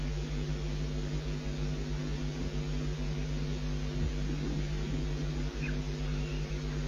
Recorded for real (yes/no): yes